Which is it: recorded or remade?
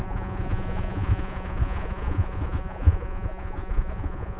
remade